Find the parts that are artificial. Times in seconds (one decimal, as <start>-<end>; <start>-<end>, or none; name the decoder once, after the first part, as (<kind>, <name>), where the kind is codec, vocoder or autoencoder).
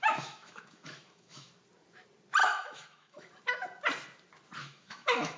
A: 0.0-1.5 (autoencoder, DAC-VAE); 2.4-3.3; 4.6-5.4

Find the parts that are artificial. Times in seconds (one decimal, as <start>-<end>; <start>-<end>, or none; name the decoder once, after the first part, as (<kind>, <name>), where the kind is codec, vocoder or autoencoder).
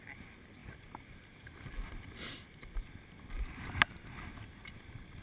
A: 0.6-3.7 (vocoder, BigVGAN v2)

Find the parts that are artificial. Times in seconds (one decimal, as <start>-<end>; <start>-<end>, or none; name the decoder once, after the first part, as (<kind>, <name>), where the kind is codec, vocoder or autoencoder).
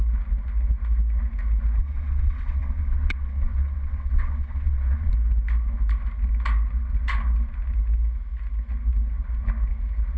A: 1.8-5.1 (vocoder, WaveNeXt)